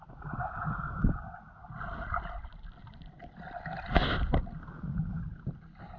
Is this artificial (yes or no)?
no